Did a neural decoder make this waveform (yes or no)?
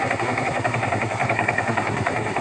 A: yes